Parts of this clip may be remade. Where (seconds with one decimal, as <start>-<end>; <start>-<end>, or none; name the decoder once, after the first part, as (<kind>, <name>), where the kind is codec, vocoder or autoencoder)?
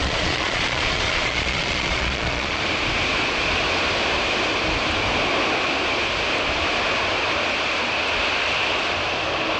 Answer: 0.0-2.6 (vocoder, Vocos)